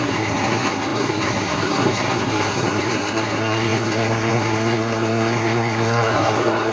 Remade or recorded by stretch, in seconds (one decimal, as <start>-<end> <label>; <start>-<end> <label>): 0.0-6.7 remade